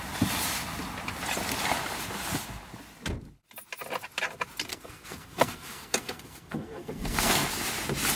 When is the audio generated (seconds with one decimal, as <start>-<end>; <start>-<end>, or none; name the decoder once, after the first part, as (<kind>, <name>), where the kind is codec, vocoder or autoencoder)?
4.7-7.5 (codec, SNAC)